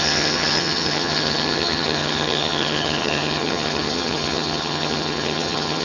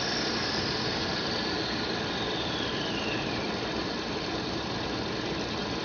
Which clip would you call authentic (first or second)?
second